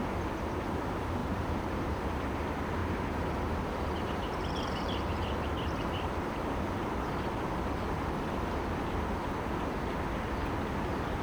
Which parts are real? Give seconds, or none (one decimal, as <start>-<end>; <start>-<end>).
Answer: 0.0-1.2; 2.0-2.8; 6.9-11.2